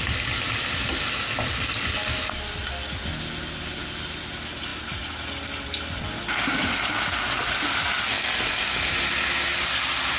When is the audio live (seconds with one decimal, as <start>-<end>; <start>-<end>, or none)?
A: 0.0-10.2